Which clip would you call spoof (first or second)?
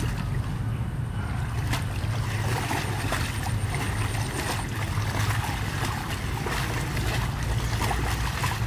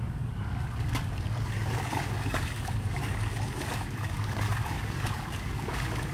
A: second